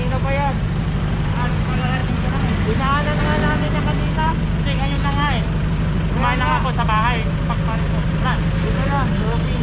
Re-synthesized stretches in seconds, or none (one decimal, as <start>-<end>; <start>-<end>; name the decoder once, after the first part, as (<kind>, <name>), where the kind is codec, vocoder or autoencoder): none